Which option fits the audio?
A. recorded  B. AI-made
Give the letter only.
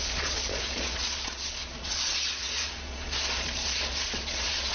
B